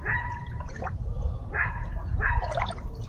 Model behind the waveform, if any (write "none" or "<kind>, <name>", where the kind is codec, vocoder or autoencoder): vocoder, Vocos